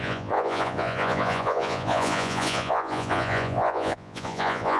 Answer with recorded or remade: remade